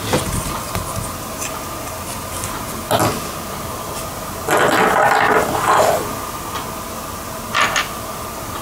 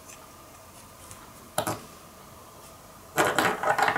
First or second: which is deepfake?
second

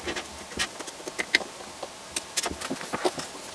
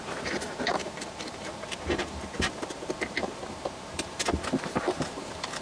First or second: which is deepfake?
second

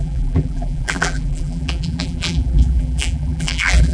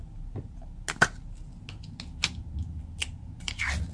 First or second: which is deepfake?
first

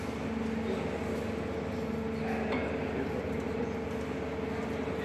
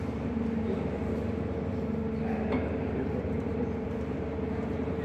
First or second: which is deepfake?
second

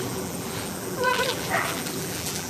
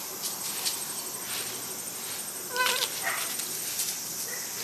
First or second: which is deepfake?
first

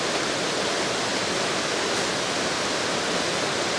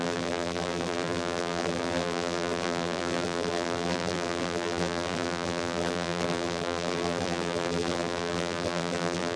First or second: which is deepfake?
second